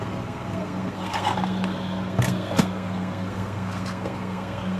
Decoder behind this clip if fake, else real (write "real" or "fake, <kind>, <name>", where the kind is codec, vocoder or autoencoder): fake, codec, SNAC